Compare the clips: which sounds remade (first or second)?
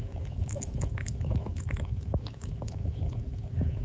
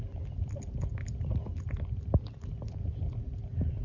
first